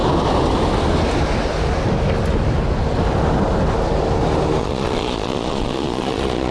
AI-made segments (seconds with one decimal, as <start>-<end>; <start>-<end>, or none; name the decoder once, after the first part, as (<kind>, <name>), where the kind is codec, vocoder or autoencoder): 4.6-6.5 (vocoder, Vocos)